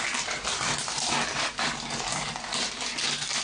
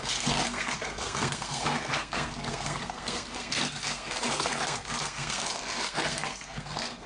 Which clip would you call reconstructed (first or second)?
second